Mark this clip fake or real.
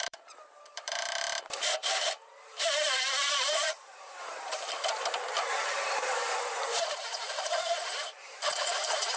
fake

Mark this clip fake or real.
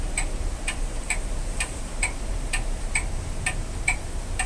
fake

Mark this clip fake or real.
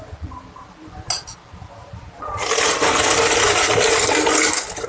real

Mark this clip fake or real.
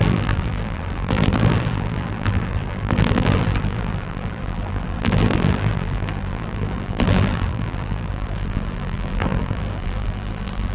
fake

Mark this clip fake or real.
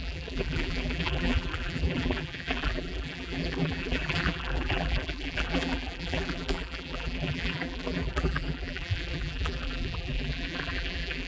fake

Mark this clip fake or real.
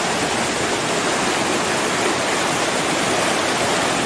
real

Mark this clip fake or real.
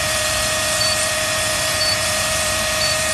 fake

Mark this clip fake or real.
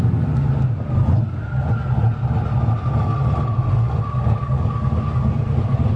real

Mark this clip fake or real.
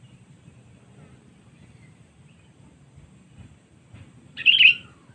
fake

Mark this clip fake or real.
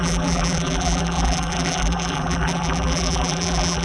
fake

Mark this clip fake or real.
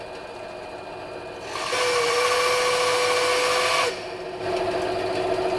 real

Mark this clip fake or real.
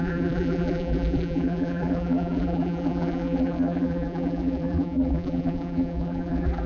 fake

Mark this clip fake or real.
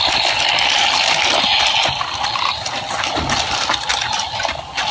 real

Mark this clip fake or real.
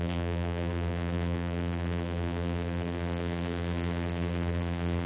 fake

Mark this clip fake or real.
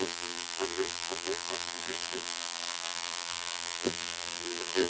fake